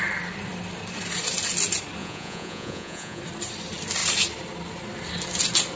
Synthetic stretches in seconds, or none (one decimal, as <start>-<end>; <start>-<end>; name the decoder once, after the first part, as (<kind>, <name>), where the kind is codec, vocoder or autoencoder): 2.0-3.2 (vocoder, Vocos)